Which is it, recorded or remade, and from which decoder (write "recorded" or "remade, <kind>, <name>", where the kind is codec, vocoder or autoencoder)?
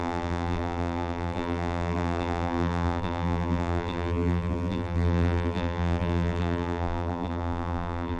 remade, vocoder, BigVGAN v2